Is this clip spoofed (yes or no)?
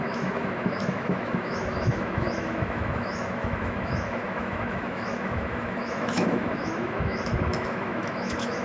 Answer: yes